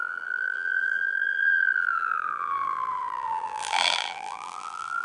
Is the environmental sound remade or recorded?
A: remade